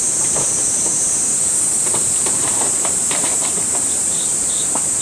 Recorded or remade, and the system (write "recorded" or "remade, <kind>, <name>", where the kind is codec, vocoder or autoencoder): remade, vocoder, BigVGAN v2